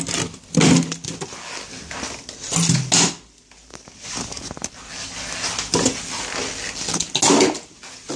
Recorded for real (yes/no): yes